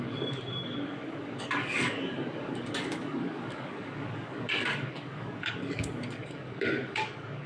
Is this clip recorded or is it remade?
remade